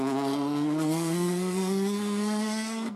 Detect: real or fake fake